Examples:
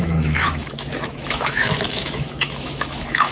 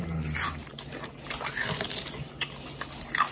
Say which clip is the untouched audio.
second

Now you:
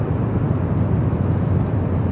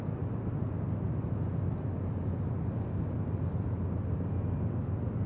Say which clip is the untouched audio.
second